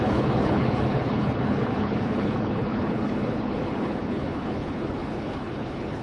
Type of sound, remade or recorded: remade